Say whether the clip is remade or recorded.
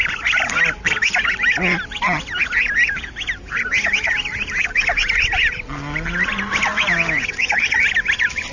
recorded